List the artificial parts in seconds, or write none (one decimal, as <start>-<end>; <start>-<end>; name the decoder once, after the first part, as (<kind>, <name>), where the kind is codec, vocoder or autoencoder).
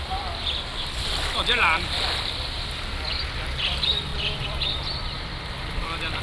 0.0-6.2 (vocoder, BigVGAN v2)